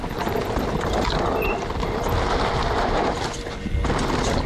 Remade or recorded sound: recorded